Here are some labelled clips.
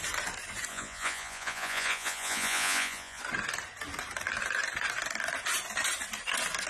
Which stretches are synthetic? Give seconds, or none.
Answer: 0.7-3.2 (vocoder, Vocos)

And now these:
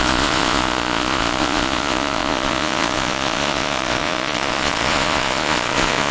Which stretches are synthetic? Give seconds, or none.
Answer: 0.0-6.1 (vocoder, Vocos)

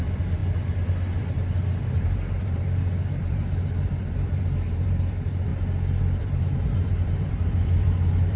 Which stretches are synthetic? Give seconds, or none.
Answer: 0.0-5.5 (vocoder, BigVGAN v2); 6.0-8.4

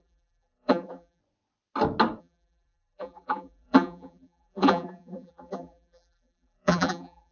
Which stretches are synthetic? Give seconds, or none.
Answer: 0.0-1.2 (vocoder, BigVGAN v2); 2.2-7.3

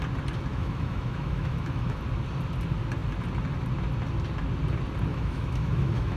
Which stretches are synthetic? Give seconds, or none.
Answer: 0.5-2.0 (autoencoder, DAC-VAE); 5.1-6.2

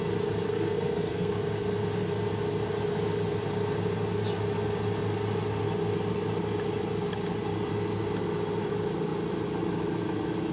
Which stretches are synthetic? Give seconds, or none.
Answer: 0.5-1.3 (codec, SNAC)

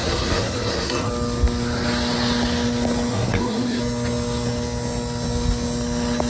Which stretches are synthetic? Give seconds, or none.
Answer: 0.0-1.1 (codec, SNAC); 3.1-3.8

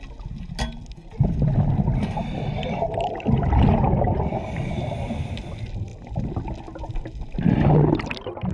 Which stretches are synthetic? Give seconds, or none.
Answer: none